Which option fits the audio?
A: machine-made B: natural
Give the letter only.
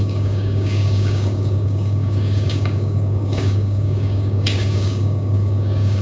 A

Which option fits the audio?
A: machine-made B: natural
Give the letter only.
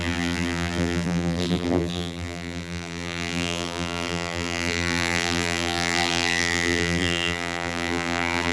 A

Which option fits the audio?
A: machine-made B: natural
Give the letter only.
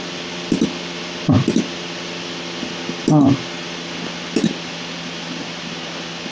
B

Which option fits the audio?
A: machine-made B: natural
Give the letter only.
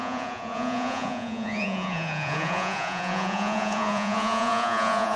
A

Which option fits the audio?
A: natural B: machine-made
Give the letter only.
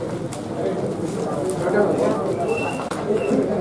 A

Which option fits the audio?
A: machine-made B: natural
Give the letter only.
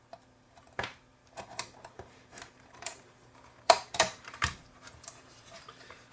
A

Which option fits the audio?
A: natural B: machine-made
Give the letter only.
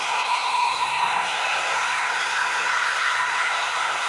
B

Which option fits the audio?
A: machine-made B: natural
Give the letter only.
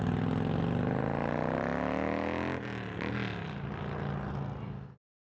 B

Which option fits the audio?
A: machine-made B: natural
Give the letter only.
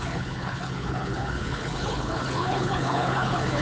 A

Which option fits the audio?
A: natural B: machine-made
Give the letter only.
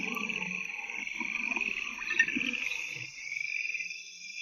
A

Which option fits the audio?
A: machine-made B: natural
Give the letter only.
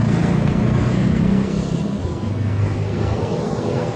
A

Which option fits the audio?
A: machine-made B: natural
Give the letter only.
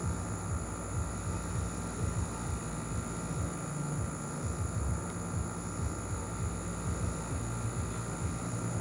B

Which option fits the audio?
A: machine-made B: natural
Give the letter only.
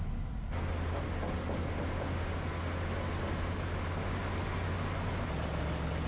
B